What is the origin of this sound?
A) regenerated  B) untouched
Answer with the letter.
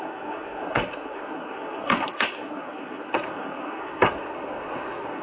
A